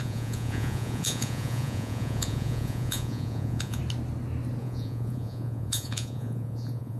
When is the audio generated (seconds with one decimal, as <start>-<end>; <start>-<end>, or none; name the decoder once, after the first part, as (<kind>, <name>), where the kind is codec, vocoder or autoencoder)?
0.0-3.8 (vocoder, Vocos); 4.6-7.0